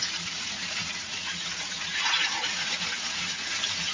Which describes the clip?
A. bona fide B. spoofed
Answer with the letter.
B